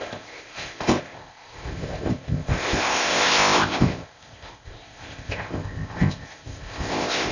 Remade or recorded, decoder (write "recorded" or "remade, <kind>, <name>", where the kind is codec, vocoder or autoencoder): remade, codec, ZipCodec